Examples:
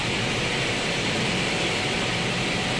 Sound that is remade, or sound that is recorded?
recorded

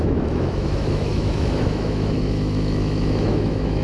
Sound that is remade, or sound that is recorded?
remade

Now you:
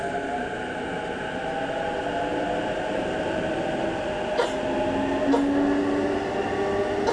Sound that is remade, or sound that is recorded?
recorded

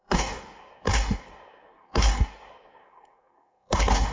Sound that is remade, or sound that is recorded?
remade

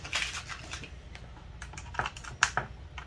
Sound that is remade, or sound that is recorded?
recorded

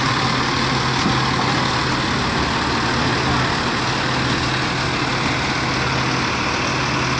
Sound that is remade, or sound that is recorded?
recorded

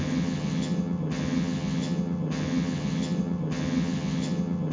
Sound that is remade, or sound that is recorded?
remade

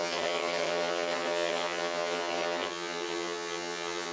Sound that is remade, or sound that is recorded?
remade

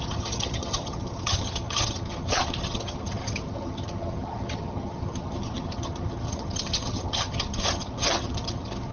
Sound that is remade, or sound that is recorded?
remade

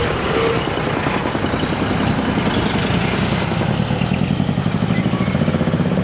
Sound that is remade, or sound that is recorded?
recorded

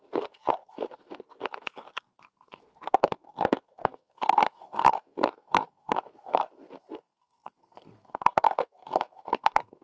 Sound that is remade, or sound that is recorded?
remade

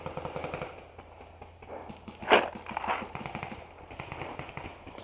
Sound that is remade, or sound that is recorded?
recorded